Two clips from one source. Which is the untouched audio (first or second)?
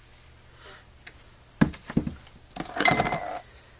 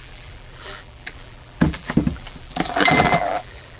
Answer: first